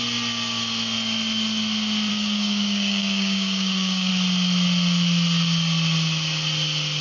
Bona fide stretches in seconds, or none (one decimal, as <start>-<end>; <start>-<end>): 0.0-2.1; 4.1-7.0